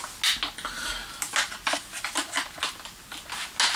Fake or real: real